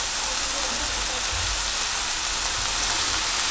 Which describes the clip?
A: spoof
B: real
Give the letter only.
B